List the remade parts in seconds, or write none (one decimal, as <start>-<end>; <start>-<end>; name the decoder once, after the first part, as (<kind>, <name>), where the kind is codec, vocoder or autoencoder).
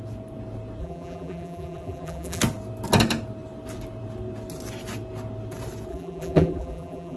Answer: 0.8-2.4 (vocoder, BigVGAN v2); 5.9-7.2